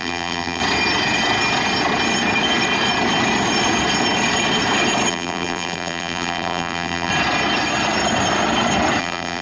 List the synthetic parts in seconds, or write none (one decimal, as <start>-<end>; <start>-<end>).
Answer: 0.0-0.6; 5.1-7.1; 9.0-9.4